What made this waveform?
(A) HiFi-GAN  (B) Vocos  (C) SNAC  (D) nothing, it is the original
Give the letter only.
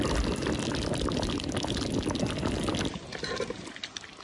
D